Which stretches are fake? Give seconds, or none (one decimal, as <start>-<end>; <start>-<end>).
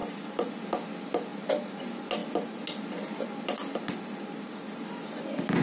0.0-0.5